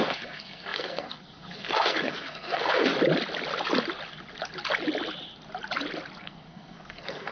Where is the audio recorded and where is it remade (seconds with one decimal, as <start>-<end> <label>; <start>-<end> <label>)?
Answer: 0.0-2.9 remade; 2.9-6.2 recorded; 6.2-7.3 remade